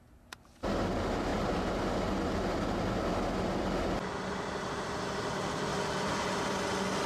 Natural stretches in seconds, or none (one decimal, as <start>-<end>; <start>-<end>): 0.0-7.1